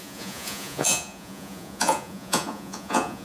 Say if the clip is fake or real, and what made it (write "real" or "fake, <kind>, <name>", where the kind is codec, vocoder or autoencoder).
fake, vocoder, Vocos